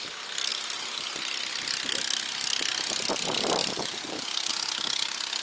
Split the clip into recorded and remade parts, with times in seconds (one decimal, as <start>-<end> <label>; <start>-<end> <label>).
0.0-3.6 recorded; 3.6-4.5 remade; 4.5-5.4 recorded